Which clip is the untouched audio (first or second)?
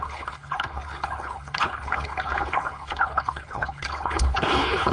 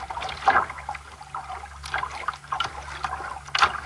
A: second